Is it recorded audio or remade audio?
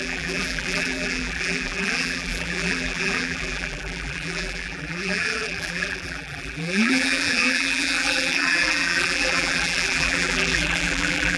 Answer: remade